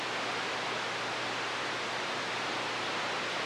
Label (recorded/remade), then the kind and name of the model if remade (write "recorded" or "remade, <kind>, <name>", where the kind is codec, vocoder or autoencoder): recorded